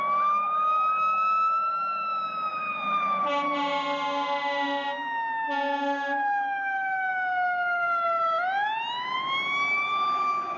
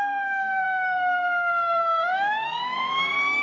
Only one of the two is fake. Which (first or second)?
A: second